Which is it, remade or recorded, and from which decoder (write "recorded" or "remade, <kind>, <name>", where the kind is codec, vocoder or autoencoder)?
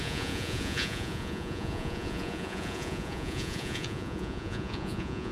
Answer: remade, vocoder, Vocos